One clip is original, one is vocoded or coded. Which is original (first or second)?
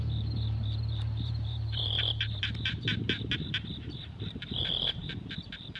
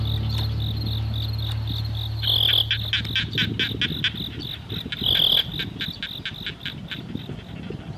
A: second